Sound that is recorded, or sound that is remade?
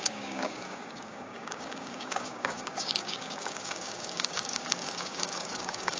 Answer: remade